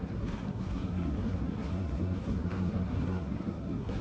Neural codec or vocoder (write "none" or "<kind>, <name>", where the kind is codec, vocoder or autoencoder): codec, SNAC